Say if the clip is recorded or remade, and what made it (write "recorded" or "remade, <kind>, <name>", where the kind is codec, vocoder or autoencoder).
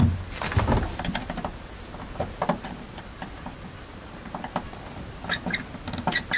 recorded